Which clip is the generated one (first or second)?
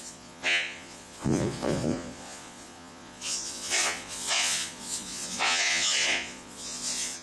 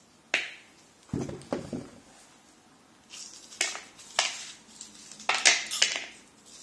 first